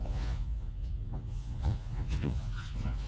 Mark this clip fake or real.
fake